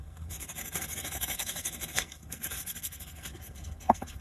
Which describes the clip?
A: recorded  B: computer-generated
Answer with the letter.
B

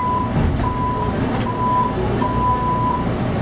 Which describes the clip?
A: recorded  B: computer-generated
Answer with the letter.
A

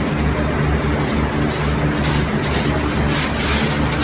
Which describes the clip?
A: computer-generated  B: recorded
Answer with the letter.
B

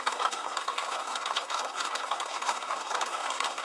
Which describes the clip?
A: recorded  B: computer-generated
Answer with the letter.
B